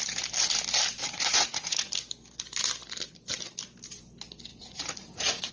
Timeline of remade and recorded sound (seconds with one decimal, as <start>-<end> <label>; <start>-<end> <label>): 0.0-1.0 recorded; 1.0-1.9 remade; 1.9-4.5 recorded; 4.5-5.5 remade